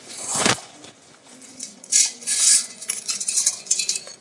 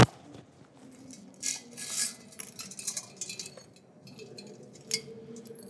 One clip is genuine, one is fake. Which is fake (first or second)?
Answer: first